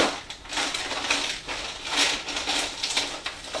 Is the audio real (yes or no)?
yes